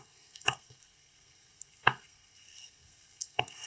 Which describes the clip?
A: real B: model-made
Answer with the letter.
B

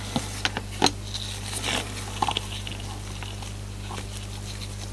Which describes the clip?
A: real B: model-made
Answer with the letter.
A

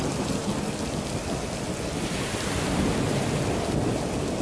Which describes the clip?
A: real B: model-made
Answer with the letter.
A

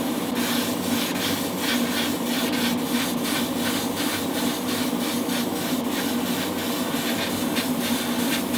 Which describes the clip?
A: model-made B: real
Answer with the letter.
B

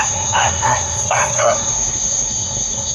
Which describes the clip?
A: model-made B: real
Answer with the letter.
A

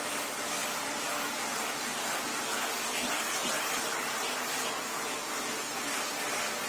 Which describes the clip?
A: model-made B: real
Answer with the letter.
B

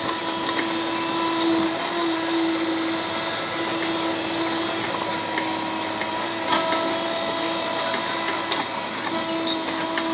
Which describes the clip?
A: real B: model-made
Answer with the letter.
A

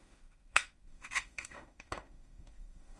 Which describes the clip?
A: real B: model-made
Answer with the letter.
B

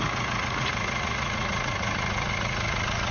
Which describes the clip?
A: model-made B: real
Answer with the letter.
A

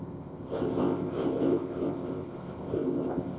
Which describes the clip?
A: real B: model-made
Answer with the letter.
B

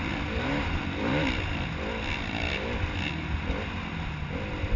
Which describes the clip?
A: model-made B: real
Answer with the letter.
B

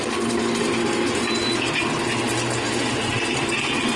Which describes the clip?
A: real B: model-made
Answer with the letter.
A